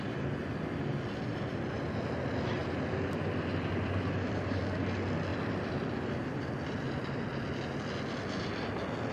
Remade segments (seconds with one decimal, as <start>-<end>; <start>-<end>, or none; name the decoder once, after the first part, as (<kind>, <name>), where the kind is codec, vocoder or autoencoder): 1.3-1.8 (vocoder, BigVGAN v2); 2.6-4.6; 5.3-7.3